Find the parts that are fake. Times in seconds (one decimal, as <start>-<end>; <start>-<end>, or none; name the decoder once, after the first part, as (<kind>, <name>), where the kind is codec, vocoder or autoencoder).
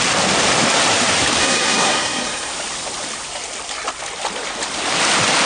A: 1.4-2.5 (codec, SNAC)